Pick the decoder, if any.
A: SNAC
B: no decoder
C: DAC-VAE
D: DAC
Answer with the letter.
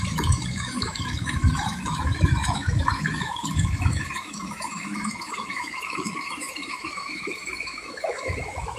C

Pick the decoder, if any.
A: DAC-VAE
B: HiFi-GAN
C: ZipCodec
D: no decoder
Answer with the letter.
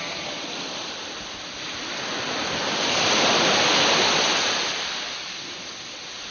D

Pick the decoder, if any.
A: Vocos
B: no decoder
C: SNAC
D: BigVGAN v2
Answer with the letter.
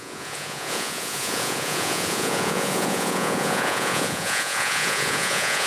A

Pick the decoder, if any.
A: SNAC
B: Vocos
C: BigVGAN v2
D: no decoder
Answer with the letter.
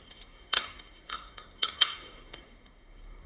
A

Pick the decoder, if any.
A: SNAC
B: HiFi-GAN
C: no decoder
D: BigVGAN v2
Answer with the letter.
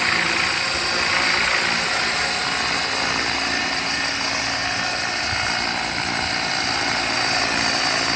C